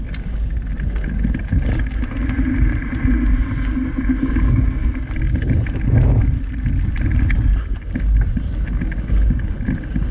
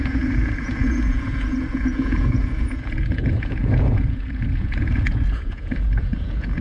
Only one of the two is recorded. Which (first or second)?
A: first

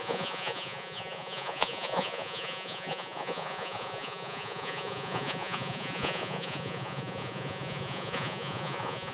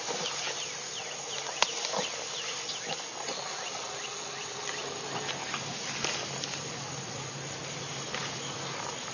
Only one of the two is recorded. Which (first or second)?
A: second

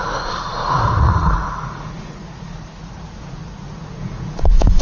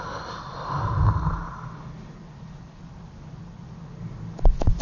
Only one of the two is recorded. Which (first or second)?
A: second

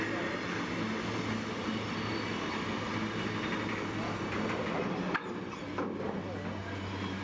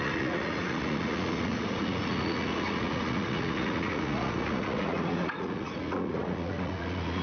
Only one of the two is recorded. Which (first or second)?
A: first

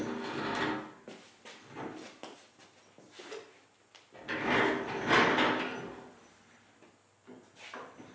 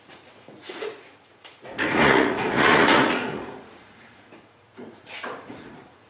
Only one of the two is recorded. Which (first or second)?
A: first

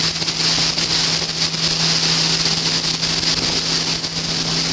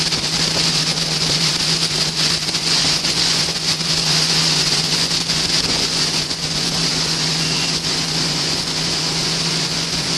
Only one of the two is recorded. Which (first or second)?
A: first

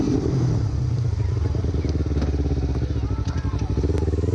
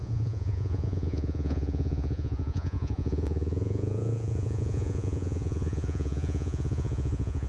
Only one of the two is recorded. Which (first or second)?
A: first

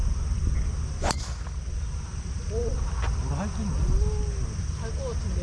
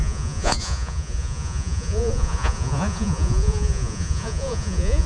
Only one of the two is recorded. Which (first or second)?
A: first